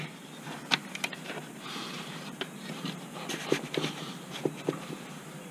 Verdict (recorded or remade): remade